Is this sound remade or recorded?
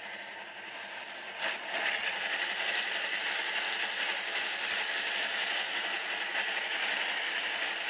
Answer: recorded